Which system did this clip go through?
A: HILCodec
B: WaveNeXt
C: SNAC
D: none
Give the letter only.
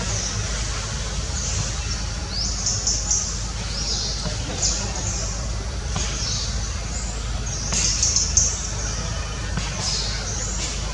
D